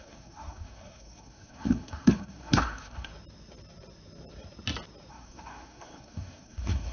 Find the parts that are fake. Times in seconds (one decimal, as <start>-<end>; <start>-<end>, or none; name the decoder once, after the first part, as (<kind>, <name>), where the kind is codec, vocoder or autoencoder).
0.0-3.1 (codec, SNAC); 5.1-6.9